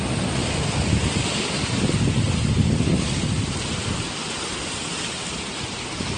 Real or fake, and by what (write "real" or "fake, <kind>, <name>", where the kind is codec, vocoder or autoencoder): real